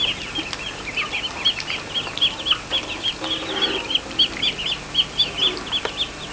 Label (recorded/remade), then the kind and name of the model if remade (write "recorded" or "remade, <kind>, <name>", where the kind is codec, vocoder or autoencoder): recorded